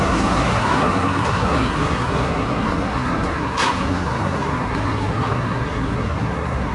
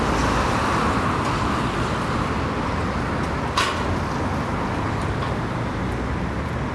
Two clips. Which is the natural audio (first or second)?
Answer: second